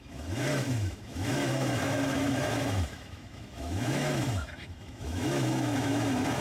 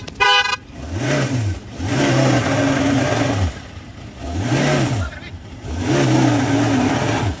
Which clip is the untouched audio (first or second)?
second